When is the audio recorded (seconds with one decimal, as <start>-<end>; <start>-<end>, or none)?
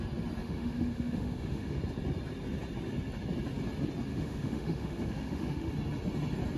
0.0-0.4; 1.8-4.1; 5.7-6.6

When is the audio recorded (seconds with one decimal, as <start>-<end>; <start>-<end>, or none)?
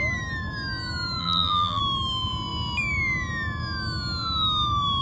0.0-1.2; 1.8-5.0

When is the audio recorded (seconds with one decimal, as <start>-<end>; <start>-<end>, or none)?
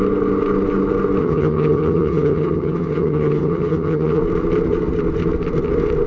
0.0-1.2; 4.2-6.1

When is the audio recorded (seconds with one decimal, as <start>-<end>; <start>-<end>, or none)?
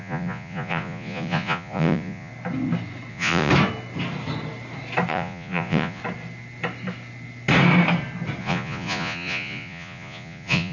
2.3-3.1; 3.5-5.1; 6.0-8.4